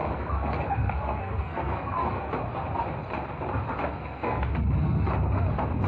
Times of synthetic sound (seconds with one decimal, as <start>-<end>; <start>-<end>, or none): 0.0-2.3; 3.9-5.1